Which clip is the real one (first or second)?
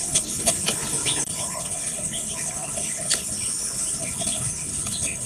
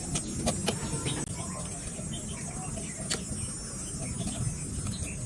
second